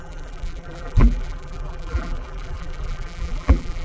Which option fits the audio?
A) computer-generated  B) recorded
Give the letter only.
A